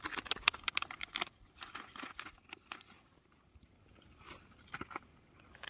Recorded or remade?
recorded